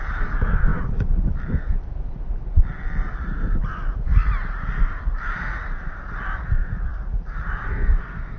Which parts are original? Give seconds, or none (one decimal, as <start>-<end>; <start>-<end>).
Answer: 0.0-8.4